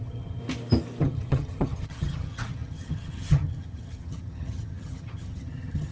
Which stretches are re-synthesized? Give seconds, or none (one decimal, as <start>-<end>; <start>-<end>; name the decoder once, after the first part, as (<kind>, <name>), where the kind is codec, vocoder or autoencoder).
0.0-0.4 (vocoder, HiFi-GAN); 1.0-5.9